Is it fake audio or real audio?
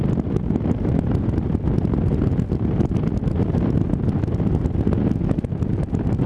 real